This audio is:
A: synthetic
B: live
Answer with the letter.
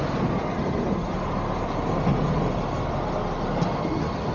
B